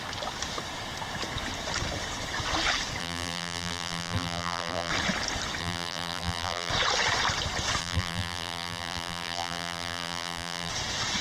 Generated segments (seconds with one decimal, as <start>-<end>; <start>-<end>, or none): 3.0-4.9; 5.6-6.7; 7.8-10.7